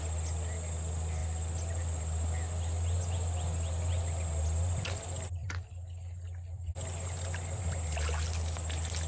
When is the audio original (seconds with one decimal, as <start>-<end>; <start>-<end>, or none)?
0.0-9.1